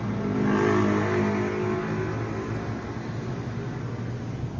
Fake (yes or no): no